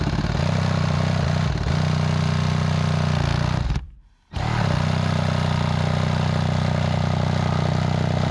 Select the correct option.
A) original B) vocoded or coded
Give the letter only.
A